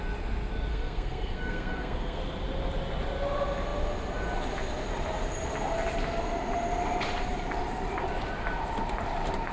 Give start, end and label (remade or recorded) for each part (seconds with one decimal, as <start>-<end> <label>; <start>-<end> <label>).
0.0-0.7 recorded; 0.7-2.2 remade; 2.2-9.5 recorded